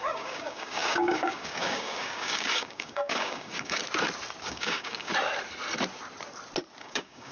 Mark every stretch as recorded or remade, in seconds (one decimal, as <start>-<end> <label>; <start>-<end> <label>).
0.0-3.8 remade; 3.8-4.4 recorded; 4.4-5.1 remade; 5.1-6.8 recorded; 6.8-7.3 remade